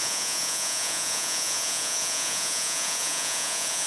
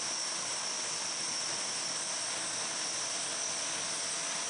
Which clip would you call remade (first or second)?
first